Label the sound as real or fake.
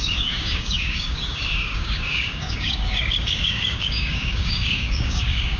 fake